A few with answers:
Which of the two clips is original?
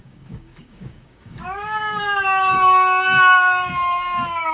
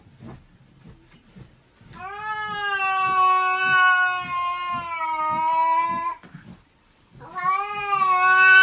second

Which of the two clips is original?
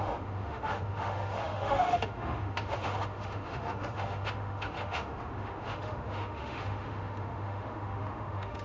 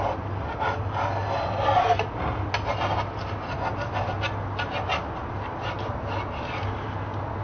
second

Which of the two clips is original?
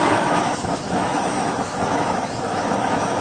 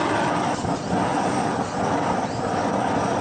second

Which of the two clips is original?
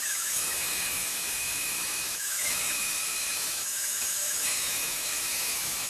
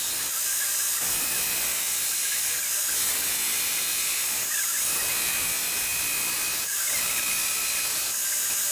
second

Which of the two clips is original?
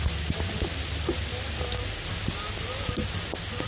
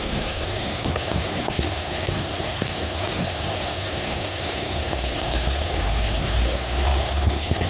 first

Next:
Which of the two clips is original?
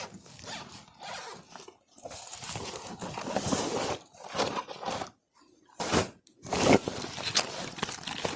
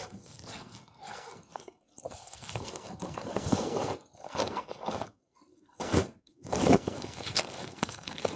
first